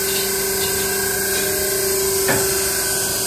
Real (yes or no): yes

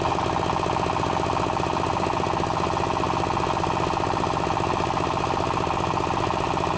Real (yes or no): yes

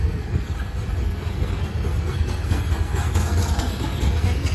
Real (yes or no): no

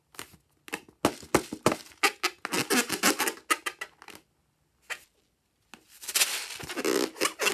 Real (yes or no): yes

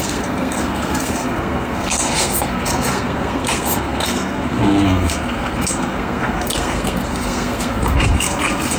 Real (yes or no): no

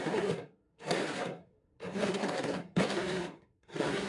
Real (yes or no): no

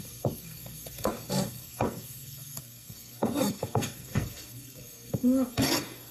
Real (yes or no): no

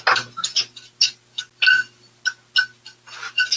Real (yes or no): yes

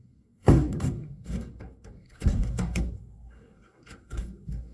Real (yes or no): no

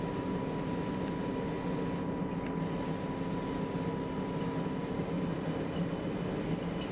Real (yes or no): yes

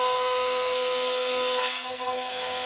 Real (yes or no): no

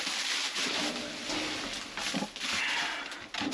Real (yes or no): yes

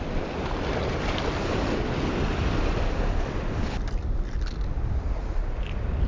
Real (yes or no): yes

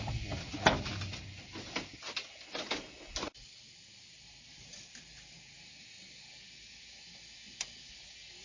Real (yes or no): yes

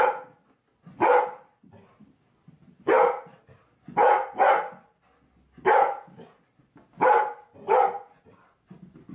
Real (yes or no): yes